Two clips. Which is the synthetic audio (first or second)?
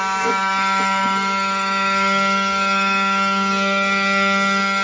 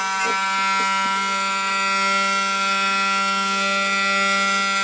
first